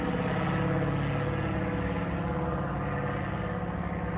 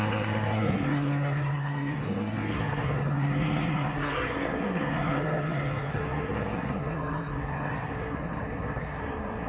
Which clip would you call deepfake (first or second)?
second